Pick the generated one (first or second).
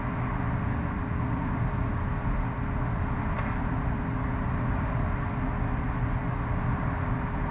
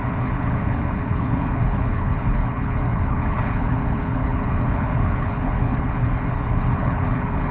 second